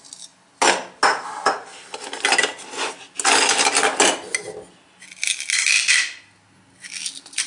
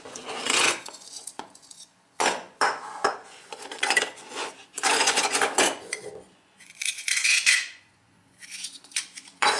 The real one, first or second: first